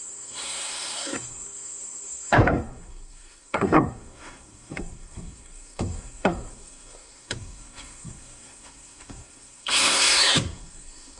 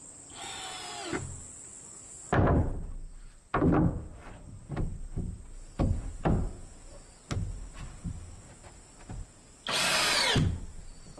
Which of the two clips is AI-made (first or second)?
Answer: first